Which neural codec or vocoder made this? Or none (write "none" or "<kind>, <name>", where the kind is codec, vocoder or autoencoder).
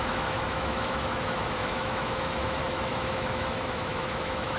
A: autoencoder, DAC-VAE